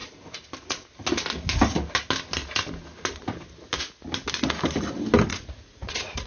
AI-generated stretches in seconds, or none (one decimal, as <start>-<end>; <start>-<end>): 5.3-6.3